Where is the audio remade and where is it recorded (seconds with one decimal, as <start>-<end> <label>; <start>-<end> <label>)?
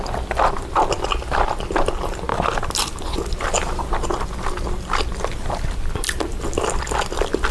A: 0.0-2.3 recorded; 2.3-6.8 remade; 6.8-7.5 recorded